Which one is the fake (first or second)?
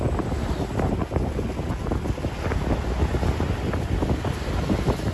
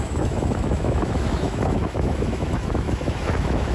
second